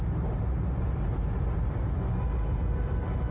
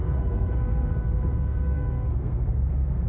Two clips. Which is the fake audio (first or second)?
second